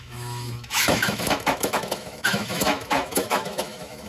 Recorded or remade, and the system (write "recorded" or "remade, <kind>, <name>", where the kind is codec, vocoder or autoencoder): remade, autoencoder, DAC-VAE